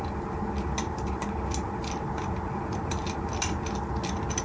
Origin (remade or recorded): recorded